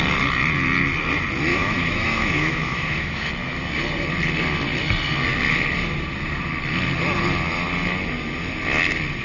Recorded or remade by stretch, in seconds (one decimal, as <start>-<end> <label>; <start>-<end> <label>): 0.0-1.5 recorded; 1.5-3.3 remade; 3.3-9.2 recorded